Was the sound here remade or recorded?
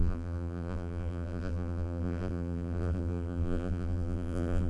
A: remade